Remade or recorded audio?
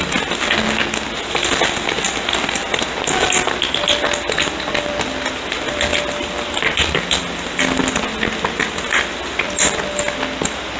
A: recorded